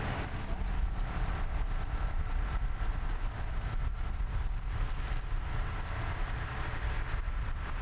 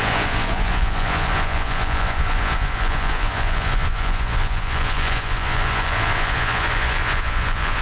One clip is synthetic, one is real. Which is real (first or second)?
first